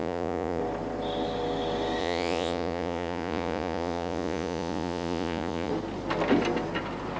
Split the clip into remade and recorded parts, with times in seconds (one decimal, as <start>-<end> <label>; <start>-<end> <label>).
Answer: 0.0-0.6 remade; 0.6-2.0 recorded; 2.0-5.7 remade; 5.7-7.2 recorded